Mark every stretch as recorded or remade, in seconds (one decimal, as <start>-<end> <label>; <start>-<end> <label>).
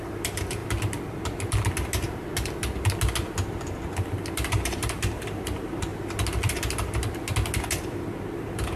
0.0-0.6 remade; 0.6-4.3 recorded; 4.3-5.9 remade; 5.9-7.7 recorded; 7.7-8.8 remade